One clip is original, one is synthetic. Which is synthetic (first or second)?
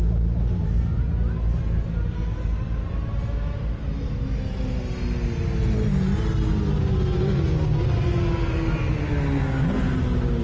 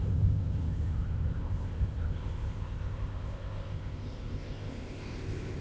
second